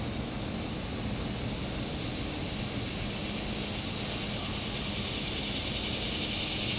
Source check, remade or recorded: recorded